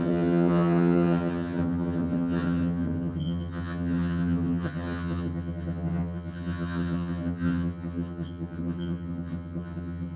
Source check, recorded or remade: remade